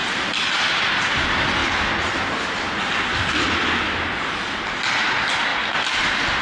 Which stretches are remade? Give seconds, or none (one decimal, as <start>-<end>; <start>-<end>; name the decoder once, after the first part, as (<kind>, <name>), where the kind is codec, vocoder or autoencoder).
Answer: 0.0-1.0 (vocoder, BigVGAN v2); 5.5-6.4